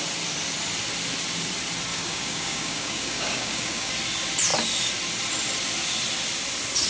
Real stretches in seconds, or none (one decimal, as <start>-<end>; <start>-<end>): 0.0-1.9; 3.9-6.9